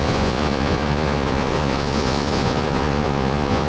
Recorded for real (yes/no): no